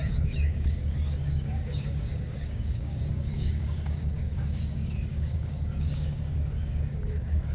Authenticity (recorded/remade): remade